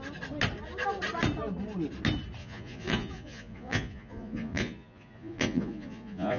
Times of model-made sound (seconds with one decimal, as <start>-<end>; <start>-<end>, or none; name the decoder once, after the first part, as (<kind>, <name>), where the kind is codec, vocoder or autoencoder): 2.4-6.4 (vocoder, Vocos)